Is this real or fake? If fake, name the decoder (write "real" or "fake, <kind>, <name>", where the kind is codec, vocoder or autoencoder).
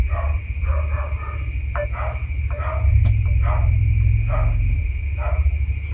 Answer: real